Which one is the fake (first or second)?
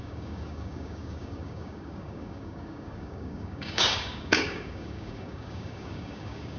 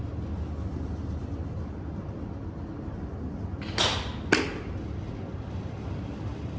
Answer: first